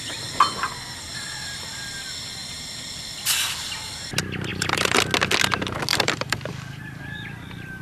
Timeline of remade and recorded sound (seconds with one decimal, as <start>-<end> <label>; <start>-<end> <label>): 0.0-4.5 recorded; 4.5-5.0 remade; 5.0-5.9 recorded; 5.9-7.0 remade; 7.0-7.8 recorded